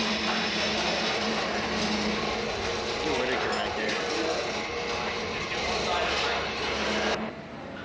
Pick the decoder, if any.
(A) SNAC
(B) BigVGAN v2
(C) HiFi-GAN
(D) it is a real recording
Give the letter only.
D